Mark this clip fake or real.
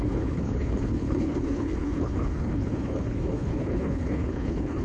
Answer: fake